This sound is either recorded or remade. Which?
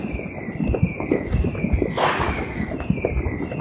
recorded